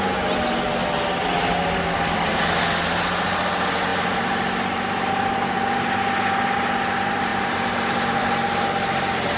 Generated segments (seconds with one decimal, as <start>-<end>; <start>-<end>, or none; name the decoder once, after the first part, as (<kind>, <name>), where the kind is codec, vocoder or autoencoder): none